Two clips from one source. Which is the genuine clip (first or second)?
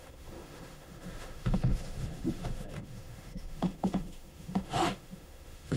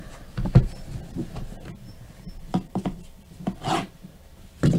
second